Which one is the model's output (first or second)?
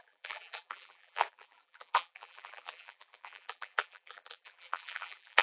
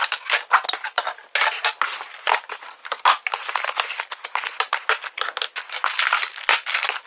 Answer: first